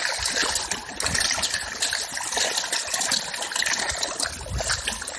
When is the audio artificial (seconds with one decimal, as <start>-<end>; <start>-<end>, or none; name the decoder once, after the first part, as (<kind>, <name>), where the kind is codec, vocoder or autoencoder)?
none

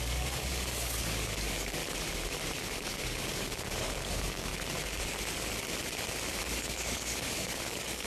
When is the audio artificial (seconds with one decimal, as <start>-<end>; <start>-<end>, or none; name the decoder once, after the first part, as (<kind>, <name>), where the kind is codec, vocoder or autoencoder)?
0.0-1.8 (codec, DAC); 2.6-4.5; 6.4-8.1

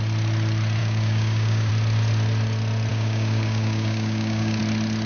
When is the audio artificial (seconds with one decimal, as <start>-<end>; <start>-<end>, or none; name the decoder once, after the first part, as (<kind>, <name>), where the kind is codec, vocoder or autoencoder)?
0.8-1.7 (codec, DAC); 2.9-4.6

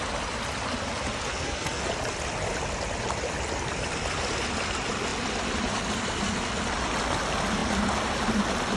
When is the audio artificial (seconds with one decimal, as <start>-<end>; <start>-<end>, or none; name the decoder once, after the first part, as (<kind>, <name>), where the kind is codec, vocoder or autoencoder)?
1.3-1.8 (codec, SNAC)